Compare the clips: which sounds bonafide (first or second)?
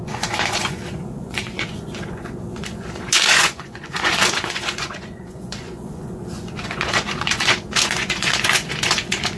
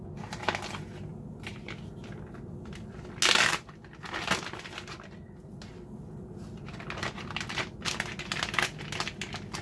second